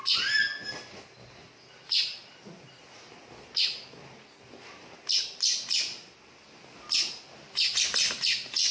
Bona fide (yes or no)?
yes